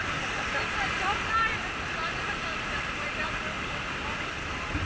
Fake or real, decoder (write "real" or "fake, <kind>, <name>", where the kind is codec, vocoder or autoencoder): real